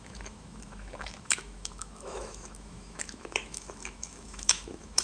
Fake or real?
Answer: fake